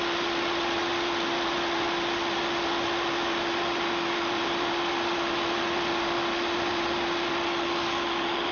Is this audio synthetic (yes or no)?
no